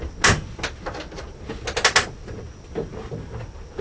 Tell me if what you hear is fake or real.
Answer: real